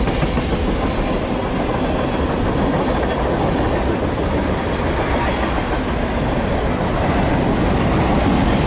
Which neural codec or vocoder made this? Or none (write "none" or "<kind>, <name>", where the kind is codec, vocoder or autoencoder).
none